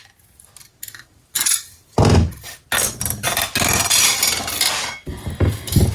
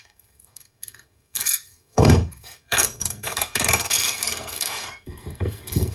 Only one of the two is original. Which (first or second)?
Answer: first